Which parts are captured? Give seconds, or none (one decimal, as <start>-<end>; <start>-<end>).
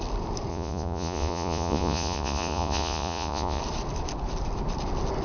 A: 0.0-0.5; 3.6-5.2